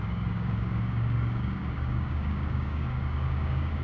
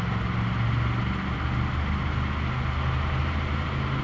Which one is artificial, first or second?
first